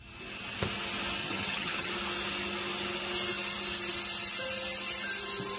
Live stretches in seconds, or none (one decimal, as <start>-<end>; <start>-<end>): 0.0-1.2; 1.9-5.6